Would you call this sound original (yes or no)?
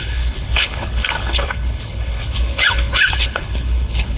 no